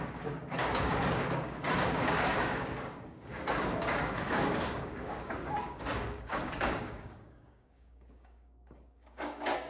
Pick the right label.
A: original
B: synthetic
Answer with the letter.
B